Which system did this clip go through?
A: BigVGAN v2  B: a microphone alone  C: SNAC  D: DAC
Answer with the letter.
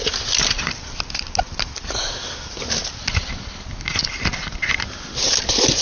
B